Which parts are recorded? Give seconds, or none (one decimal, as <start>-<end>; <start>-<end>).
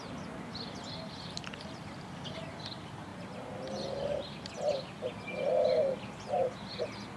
0.0-7.2